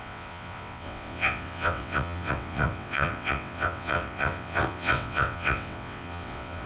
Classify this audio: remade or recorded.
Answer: remade